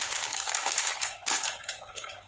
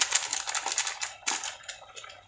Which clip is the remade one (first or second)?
first